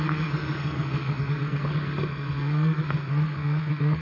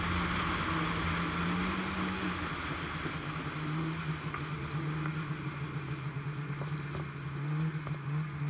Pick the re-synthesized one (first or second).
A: first